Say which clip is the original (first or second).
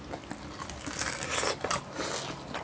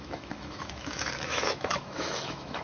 first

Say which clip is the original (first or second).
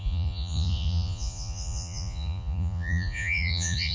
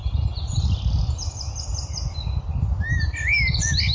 second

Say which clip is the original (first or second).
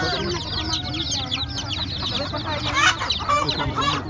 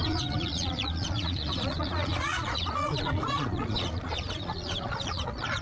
first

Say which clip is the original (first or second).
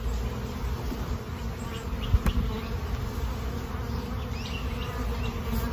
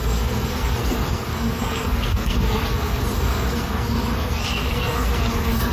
first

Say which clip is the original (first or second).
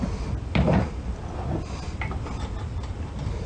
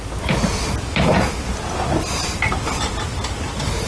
second